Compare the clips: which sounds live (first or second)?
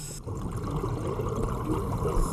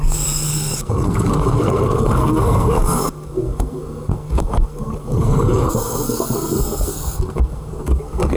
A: first